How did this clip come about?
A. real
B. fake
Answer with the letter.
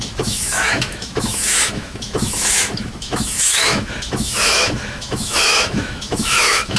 B